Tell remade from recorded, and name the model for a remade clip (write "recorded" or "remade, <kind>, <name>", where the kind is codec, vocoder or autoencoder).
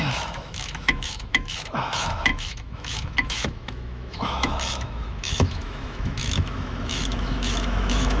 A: remade, autoencoder, DAC-VAE